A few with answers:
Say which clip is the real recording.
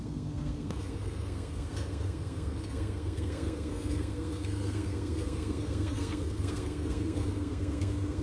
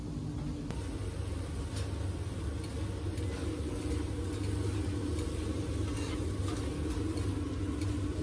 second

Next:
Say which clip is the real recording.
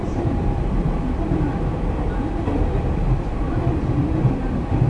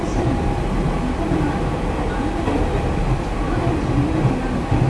second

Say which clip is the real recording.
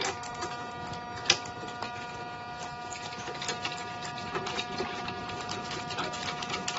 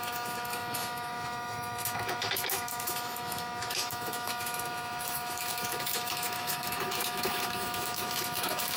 first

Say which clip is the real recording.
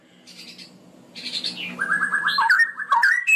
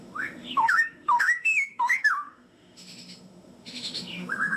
first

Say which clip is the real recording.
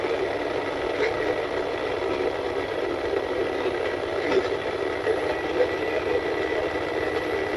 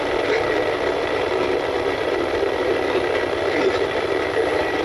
first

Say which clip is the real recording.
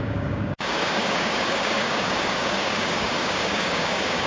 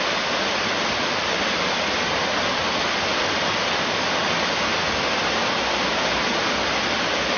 second